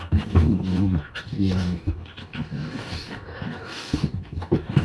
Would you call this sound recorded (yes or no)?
no